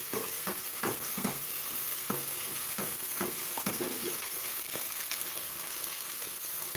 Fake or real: fake